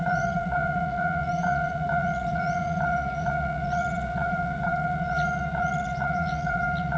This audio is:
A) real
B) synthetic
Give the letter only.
B